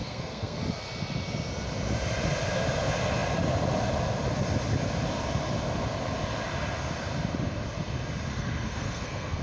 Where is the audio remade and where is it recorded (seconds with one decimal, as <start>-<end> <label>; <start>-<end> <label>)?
0.0-0.6 remade; 0.6-8.3 recorded; 8.3-9.4 remade